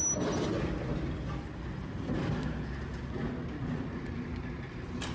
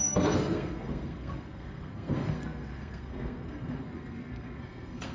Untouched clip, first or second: first